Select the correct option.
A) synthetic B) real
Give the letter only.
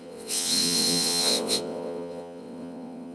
A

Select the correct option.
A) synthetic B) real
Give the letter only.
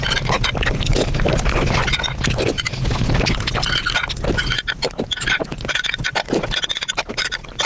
B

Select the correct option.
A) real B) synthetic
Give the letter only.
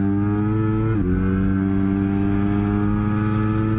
A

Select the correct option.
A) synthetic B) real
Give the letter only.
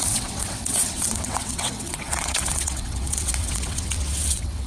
A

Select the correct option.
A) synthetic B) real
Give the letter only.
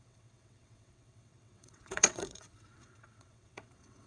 A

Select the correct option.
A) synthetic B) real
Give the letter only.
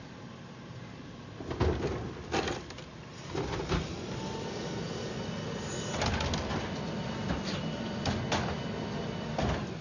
B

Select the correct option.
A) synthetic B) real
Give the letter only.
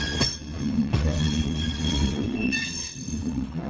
A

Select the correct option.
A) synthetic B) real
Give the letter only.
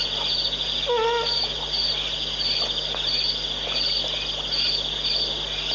B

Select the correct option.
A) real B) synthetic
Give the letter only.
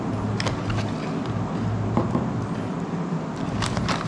A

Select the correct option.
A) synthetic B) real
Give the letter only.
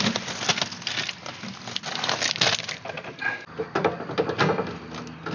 B